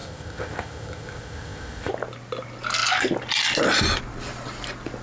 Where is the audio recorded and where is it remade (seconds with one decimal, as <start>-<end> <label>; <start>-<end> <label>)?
0.0-1.9 remade; 1.9-5.0 recorded